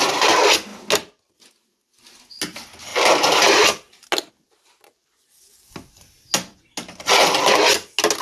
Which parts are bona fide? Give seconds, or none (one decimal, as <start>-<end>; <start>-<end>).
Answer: 0.0-8.2

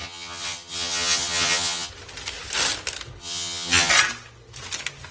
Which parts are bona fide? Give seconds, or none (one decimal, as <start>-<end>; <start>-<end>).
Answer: 1.9-3.2; 3.9-5.1